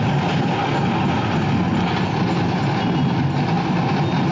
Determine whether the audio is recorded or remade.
recorded